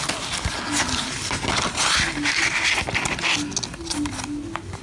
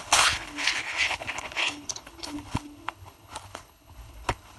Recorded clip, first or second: first